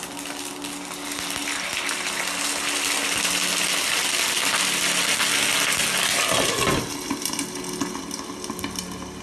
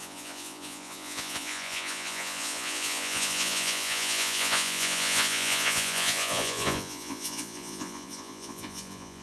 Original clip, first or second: first